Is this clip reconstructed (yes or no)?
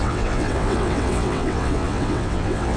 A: yes